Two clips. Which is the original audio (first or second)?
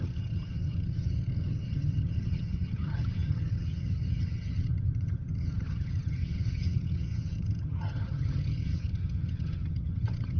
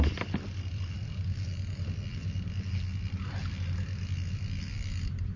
second